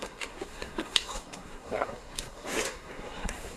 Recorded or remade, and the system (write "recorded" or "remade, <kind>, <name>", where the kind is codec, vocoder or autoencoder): remade, codec, SNAC